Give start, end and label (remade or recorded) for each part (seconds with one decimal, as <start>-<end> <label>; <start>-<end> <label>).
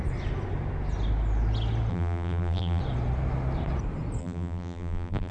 0.0-1.9 recorded; 1.9-2.8 remade; 2.8-4.2 recorded; 4.2-5.3 remade